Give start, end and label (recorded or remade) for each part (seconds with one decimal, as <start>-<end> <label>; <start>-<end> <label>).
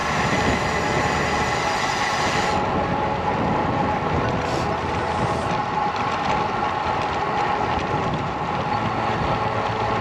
0.0-10.0 recorded